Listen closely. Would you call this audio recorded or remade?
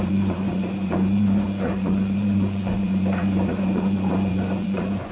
remade